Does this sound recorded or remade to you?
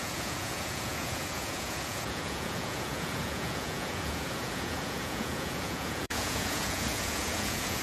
remade